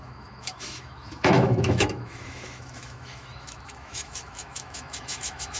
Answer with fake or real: fake